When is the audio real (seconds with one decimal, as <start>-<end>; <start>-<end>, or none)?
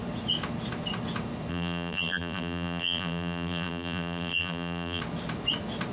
0.0-1.5; 5.0-5.9